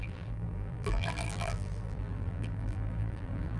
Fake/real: fake